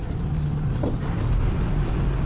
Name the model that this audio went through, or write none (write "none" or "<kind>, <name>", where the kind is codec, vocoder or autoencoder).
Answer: vocoder, BigVGAN v2